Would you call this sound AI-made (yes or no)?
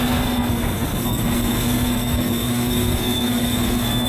yes